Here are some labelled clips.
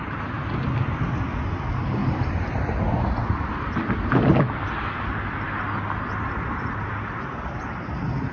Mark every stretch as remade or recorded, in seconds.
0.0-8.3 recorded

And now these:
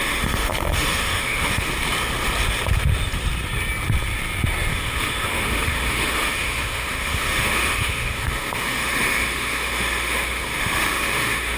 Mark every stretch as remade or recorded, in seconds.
0.0-1.7 remade; 1.7-4.7 recorded; 4.7-11.6 remade

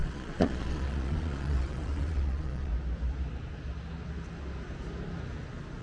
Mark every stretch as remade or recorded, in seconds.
0.0-2.7 remade; 2.7-5.8 recorded

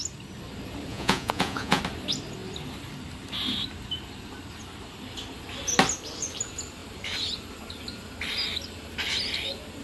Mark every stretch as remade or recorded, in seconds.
0.0-0.9 recorded; 0.9-1.8 remade; 1.8-9.8 recorded

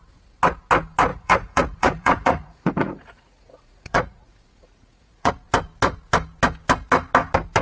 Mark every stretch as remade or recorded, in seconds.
0.0-1.1 recorded; 1.1-5.3 remade; 5.3-7.6 recorded

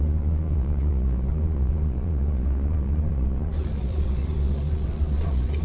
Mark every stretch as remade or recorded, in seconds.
0.0-5.6 remade

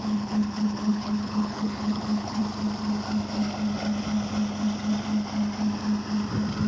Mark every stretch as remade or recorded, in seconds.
0.0-2.4 remade; 2.4-6.7 recorded